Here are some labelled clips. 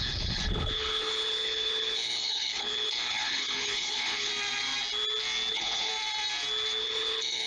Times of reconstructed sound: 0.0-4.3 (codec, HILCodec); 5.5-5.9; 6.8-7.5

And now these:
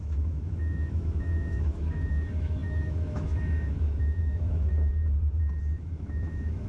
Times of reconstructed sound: 0.0-4.9 (autoencoder, DAC-VAE); 5.8-6.7

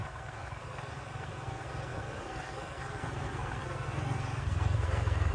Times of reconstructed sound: 0.0-5.3 (codec, SNAC)

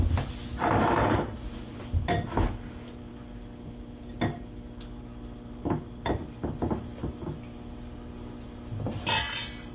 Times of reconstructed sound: none

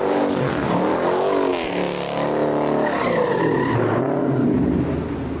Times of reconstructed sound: none

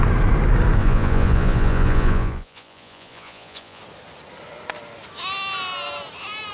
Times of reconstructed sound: 0.8-3.8 (vocoder, Vocos)